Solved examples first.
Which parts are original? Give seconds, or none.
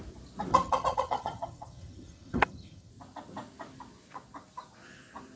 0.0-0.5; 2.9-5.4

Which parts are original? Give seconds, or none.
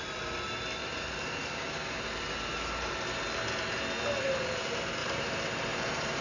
0.0-0.8; 3.2-5.0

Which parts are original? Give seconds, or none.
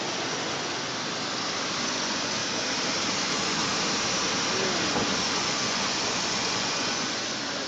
0.9-1.8; 2.4-3.2; 3.6-4.9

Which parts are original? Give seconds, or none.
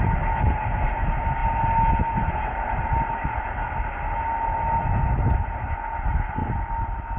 0.0-7.2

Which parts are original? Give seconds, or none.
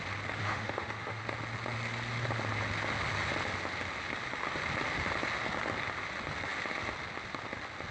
0.0-0.4; 1.2-7.9